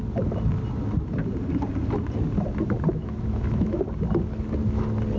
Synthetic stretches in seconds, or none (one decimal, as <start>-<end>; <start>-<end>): 2.9-3.8